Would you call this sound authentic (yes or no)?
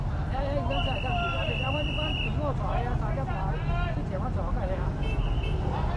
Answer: yes